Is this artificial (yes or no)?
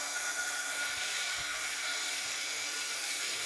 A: yes